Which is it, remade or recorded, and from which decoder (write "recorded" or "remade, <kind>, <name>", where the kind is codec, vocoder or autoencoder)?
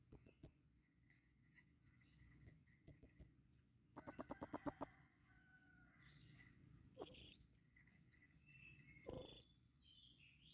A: remade, vocoder, Vocos